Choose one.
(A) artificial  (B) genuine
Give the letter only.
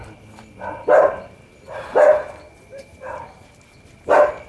B